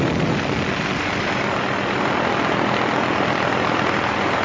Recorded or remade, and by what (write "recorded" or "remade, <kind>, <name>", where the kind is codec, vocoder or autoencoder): recorded